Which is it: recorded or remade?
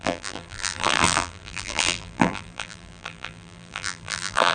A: remade